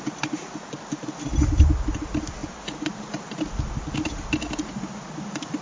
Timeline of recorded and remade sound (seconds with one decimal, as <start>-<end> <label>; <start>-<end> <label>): 0.0-5.6 recorded